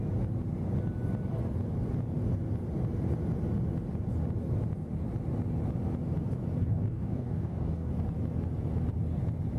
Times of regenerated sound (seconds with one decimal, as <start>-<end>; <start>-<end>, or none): 6.6-7.9